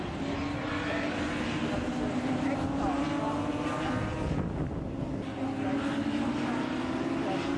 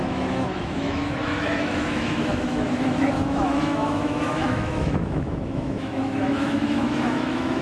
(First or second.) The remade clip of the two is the second